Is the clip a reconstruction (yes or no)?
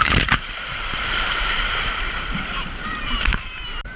yes